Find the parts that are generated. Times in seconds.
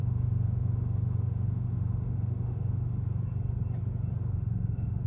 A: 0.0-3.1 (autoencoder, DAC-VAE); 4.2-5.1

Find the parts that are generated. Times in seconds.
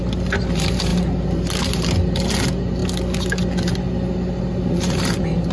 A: none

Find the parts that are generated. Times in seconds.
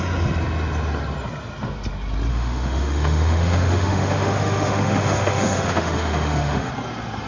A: 2.3-6.7 (autoencoder, DAC-VAE)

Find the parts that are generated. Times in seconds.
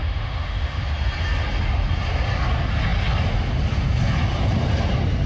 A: 0.0-0.8 (autoencoder, DAC-VAE)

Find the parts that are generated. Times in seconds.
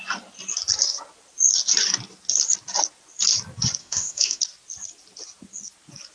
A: 3.8-4.4 (autoencoder, DAC-VAE)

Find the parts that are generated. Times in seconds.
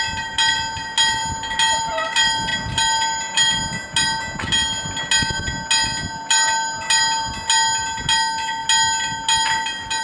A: none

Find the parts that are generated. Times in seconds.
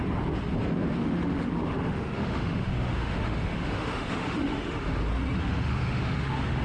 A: 1.0-5.0 (autoencoder, DAC-VAE); 5.4-6.6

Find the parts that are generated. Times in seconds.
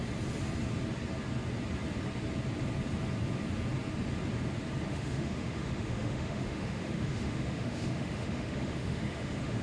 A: 4.9-9.6 (autoencoder, DAC-VAE)